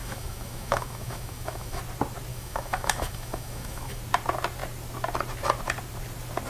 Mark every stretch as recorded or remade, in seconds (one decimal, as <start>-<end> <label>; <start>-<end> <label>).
0.0-1.8 remade; 1.8-2.3 recorded; 2.3-4.0 remade; 4.0-6.5 recorded